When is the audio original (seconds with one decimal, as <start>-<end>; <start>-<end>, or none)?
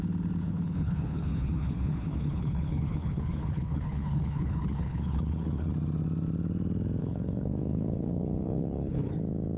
0.0-0.4; 5.7-7.0; 9.1-9.6